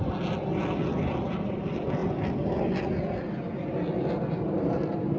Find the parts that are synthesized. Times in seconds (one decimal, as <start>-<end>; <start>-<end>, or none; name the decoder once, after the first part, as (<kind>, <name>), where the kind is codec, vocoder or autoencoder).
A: none